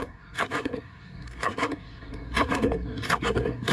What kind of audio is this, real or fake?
fake